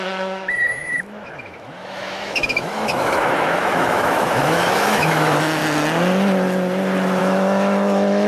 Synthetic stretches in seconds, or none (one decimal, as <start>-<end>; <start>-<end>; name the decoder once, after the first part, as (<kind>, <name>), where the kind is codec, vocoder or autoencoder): 0.0-5.6 (autoencoder, DAC-VAE); 7.2-8.3